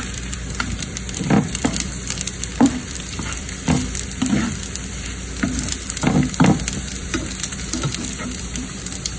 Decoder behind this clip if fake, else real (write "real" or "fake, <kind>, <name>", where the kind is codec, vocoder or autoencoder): fake, vocoder, BigVGAN v2